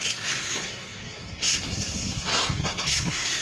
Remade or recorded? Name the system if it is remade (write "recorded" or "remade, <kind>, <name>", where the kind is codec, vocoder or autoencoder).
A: remade, codec, SNAC